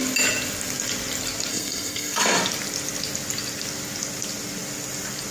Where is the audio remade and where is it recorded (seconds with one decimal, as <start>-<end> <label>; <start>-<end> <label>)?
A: 0.0-1.5 recorded; 1.5-2.4 remade; 2.4-5.3 recorded